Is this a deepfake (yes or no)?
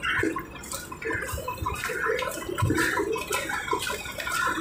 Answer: no